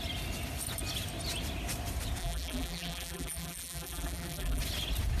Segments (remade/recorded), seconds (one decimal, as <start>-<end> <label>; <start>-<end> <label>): 0.0-2.2 recorded; 2.2-4.6 remade; 4.6-5.2 recorded